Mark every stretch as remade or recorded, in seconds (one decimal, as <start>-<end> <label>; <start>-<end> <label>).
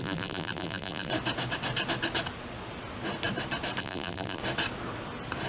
0.0-1.1 remade; 1.1-3.8 recorded; 3.8-4.4 remade; 4.4-5.5 recorded